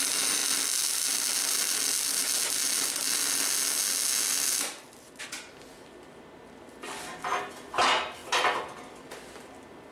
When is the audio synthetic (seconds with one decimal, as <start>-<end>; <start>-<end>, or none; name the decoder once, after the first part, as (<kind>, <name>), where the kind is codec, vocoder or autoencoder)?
none